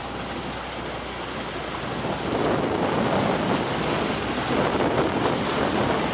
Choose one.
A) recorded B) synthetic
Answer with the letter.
A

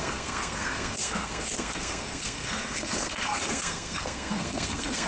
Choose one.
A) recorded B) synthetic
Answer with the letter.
B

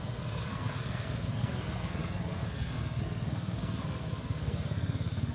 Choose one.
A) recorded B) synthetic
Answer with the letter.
B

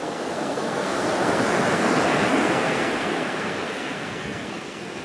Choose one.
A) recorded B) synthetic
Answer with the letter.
B